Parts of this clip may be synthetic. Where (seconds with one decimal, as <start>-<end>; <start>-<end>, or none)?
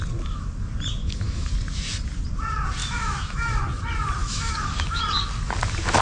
1.0-1.5; 2.8-3.5; 4.2-5.0